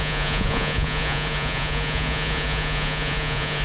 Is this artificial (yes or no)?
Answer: yes